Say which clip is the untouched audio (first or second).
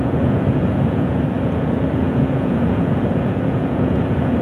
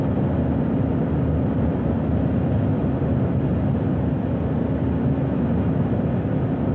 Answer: second